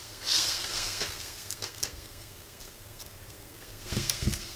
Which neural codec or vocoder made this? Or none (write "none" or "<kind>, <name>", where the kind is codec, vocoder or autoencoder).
codec, SNAC